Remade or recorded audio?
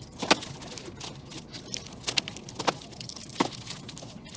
recorded